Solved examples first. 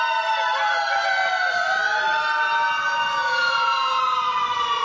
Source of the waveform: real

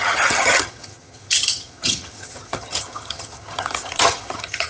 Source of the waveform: fake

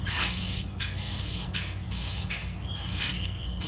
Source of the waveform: fake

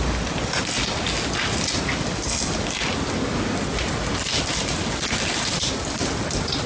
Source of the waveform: real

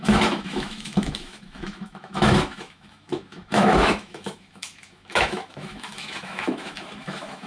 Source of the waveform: fake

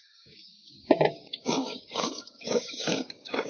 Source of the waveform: fake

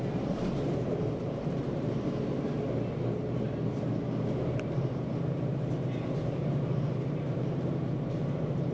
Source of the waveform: fake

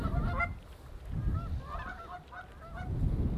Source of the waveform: real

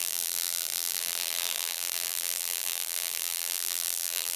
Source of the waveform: fake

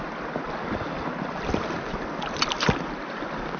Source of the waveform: real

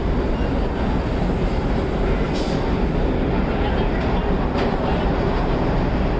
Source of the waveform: real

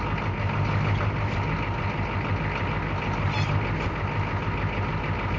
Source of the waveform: real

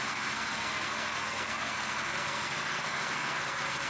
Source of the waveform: fake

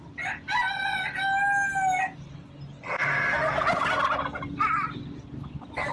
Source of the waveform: real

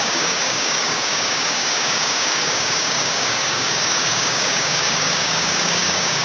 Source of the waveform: fake